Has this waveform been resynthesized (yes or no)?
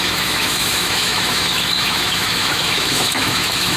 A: yes